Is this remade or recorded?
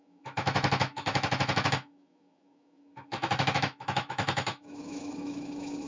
remade